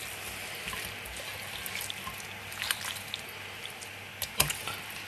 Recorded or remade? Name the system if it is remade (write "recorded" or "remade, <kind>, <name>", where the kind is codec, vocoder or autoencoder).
recorded